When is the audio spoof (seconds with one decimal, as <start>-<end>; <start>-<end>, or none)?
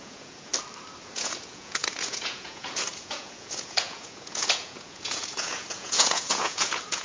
0.0-0.5; 1.0-7.0